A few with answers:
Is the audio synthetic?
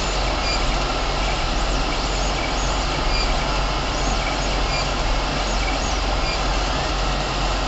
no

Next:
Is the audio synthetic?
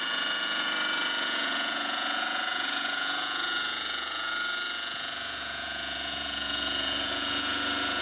yes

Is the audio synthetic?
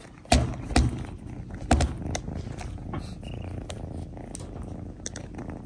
no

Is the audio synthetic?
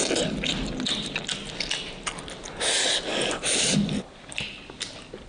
no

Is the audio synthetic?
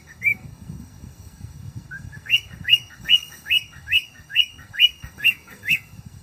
yes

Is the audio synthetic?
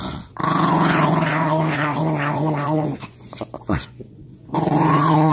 yes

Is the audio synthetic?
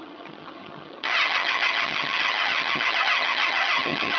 yes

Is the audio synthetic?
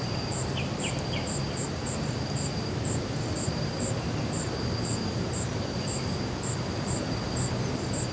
yes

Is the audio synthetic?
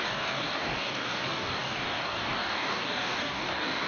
yes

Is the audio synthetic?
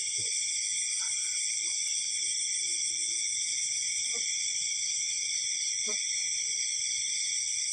no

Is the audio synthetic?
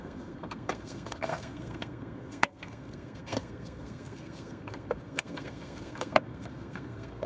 yes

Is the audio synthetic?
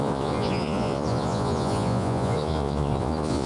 yes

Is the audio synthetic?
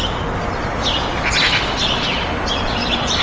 no